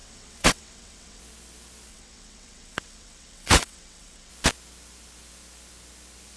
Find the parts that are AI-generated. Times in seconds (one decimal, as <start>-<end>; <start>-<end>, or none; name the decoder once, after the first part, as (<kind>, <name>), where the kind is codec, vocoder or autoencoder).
0.0-1.2 (vocoder, WaveNeXt); 1.9-4.3